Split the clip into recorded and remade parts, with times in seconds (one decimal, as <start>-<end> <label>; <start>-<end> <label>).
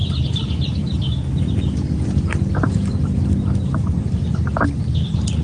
0.0-5.4 recorded